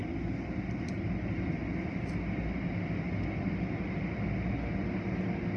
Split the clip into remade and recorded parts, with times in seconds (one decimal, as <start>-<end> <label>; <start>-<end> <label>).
0.0-5.6 recorded